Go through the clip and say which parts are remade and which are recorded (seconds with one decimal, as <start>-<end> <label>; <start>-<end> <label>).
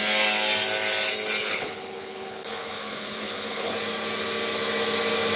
0.0-1.4 recorded; 1.4-3.7 remade; 3.7-5.4 recorded